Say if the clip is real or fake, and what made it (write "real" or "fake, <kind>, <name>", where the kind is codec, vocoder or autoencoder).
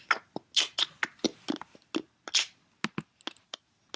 real